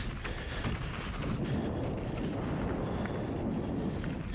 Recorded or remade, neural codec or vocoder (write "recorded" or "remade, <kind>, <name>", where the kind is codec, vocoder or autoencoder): recorded